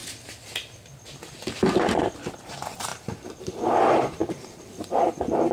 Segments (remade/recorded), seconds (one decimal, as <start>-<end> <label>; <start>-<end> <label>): 0.0-2.3 recorded; 2.3-5.5 remade